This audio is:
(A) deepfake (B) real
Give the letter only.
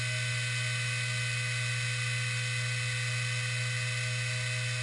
B